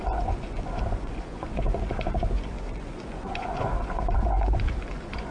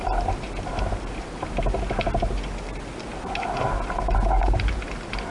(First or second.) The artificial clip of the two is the first